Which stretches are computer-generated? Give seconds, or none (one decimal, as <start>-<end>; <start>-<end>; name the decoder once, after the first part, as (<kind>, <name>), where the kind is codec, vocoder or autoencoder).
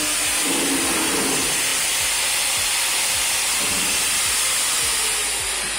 1.7-3.4 (vocoder, BigVGAN v2)